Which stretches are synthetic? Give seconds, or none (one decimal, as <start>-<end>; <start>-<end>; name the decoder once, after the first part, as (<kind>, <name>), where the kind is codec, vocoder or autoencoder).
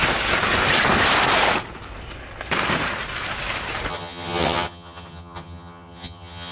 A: 3.9-6.5 (vocoder, HiFi-GAN)